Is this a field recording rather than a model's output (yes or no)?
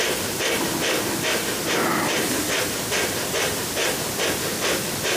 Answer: yes